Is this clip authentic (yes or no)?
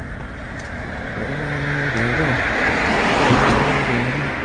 yes